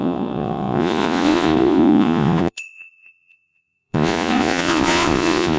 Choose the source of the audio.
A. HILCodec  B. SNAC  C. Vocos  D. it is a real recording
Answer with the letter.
C